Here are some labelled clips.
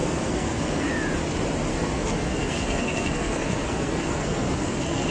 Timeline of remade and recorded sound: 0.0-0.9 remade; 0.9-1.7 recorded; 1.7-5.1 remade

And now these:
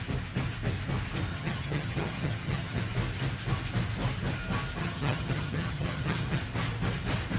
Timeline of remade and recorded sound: 0.0-1.3 recorded; 1.3-2.8 remade; 2.8-4.8 recorded; 4.8-6.4 remade; 6.4-7.4 recorded

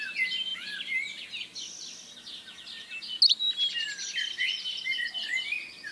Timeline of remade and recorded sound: 0.0-5.9 recorded

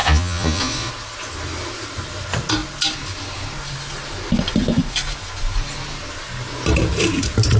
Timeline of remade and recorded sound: 0.0-0.9 remade; 0.9-7.6 recorded

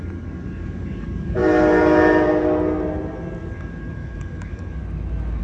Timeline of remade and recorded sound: 0.0-1.4 remade; 1.4-3.5 recorded; 3.5-4.8 remade; 4.8-5.4 recorded

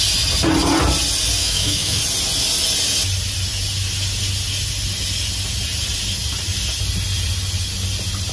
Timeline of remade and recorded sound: 0.0-1.4 recorded; 1.4-2.0 remade; 2.0-8.3 recorded

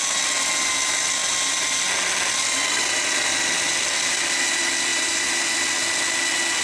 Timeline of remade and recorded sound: 0.0-4.9 recorded; 4.9-5.6 remade; 5.6-6.6 recorded